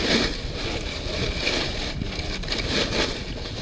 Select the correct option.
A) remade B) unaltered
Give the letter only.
B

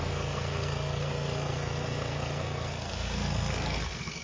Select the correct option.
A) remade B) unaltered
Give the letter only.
A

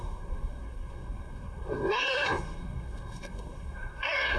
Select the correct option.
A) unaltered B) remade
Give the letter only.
B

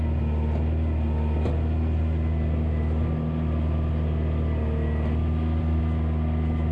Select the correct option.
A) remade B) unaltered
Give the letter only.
B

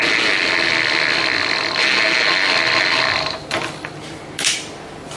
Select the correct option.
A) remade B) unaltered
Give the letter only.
B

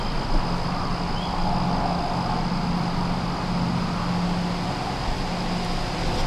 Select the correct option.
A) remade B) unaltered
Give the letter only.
B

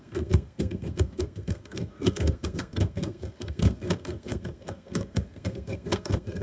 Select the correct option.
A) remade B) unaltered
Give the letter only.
A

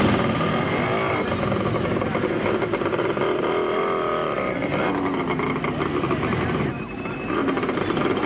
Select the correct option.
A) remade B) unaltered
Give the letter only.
B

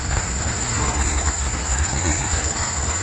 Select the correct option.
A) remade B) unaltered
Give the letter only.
A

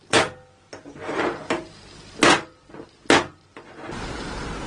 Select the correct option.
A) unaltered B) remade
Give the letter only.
A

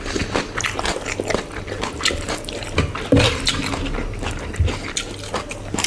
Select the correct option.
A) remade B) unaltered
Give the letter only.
B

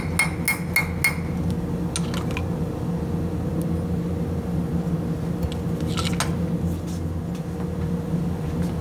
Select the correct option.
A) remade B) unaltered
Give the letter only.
B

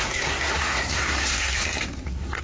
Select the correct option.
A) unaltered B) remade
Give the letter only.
B